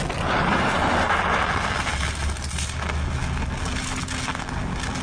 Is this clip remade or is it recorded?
recorded